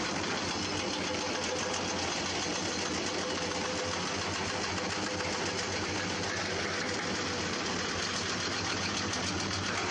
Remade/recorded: recorded